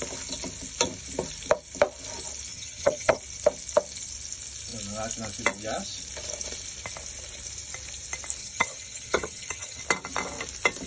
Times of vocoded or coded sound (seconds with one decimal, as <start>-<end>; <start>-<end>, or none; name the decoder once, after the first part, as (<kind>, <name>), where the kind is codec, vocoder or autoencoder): 2.5-3.2 (vocoder, HiFi-GAN); 8.4-9.8